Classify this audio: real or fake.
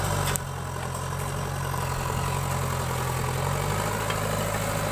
real